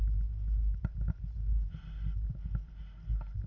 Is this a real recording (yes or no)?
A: yes